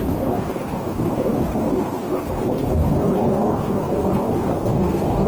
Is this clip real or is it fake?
fake